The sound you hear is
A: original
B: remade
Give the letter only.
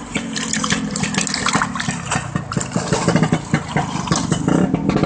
A